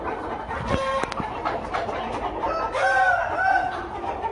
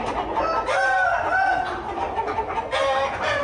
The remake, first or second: first